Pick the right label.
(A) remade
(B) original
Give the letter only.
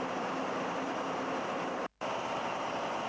A